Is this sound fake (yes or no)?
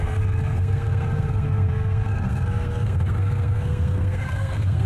yes